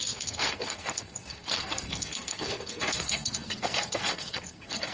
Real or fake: fake